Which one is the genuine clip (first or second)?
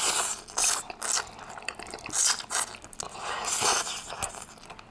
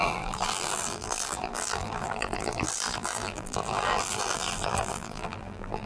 first